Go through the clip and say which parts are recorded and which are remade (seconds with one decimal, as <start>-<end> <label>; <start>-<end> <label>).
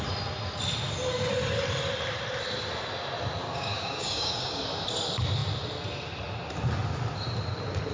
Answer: 0.0-3.4 recorded; 3.4-4.6 remade; 4.6-7.9 recorded